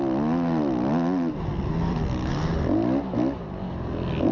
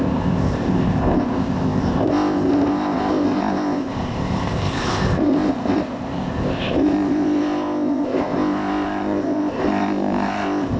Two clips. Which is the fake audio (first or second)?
second